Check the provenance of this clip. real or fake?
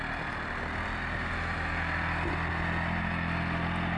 real